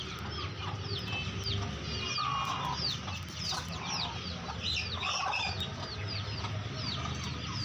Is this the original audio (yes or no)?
yes